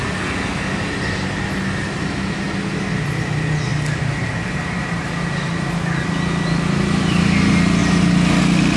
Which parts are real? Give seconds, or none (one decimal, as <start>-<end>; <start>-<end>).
0.0-8.8